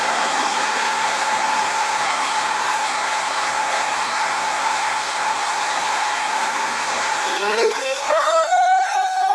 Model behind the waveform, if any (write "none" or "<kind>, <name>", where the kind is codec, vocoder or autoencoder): codec, SNAC